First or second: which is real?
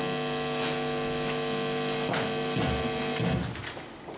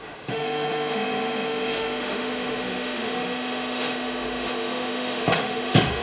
first